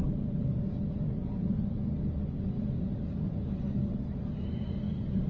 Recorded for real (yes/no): yes